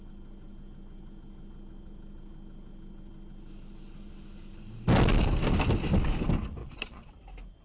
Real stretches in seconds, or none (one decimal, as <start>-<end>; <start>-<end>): 0.0-6.6; 7.1-7.6